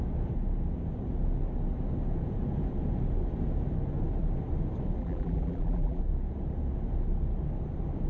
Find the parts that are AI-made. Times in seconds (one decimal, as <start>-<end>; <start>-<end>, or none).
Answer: 5.0-6.0